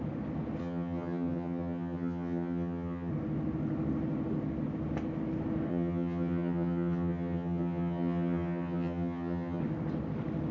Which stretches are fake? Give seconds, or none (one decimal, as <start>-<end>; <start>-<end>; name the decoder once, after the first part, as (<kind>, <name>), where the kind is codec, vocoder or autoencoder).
0.6-3.1 (vocoder, HiFi-GAN); 5.7-9.6